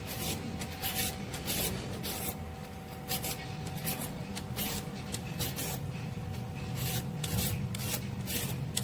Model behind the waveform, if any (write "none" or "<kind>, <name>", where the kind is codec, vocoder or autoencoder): none